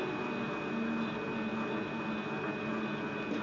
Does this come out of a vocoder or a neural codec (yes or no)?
no